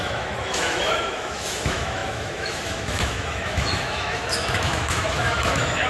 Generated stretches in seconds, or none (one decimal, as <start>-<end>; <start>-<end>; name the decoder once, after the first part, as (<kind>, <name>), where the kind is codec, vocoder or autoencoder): 0.0-5.9 (autoencoder, DAC-VAE)